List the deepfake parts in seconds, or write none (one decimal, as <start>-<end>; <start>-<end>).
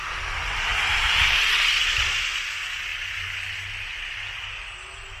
none